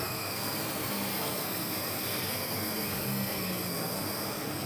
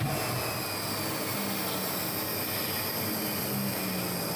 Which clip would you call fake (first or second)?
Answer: first